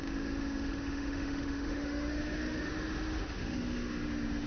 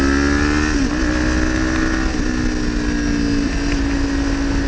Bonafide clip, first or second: second